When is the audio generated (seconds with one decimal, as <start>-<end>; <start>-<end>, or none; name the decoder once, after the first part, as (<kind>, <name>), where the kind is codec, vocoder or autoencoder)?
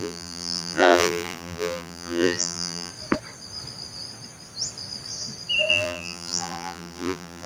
0.0-2.9 (vocoder, BigVGAN v2); 5.7-7.5